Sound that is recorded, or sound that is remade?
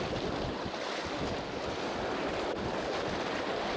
recorded